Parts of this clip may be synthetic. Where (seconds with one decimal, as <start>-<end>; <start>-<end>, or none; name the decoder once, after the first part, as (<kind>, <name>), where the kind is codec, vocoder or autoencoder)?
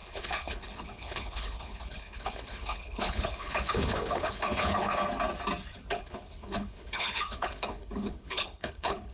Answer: 0.0-5.0 (codec, HILCodec); 5.9-9.1